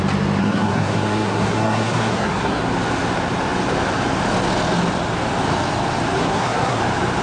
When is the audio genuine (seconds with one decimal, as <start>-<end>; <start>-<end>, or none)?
0.0-0.4; 2.6-6.2; 6.8-7.2